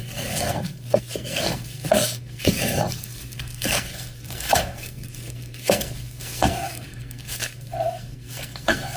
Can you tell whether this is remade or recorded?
remade